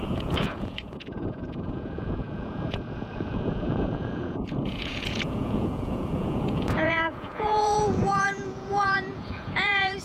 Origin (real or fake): fake